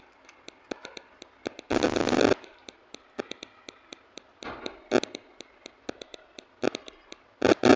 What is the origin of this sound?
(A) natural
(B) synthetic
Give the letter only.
A